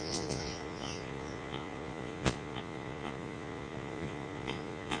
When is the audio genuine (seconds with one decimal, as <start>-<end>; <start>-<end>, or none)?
none

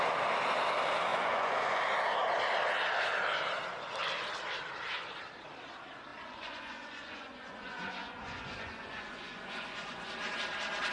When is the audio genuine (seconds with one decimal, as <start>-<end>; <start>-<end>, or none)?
0.0-1.1; 1.8-6.1; 10.1-10.9

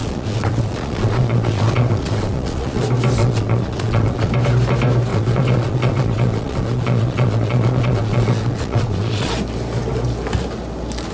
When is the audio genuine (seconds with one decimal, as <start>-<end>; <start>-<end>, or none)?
2.8-3.2; 4.3-5.1; 9.3-11.1